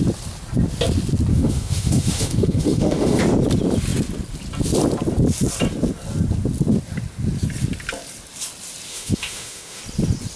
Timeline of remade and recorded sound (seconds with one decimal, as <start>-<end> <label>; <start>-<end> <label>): 0.0-1.3 recorded; 1.3-3.2 remade; 3.2-8.9 recorded; 8.9-9.8 remade; 9.8-10.4 recorded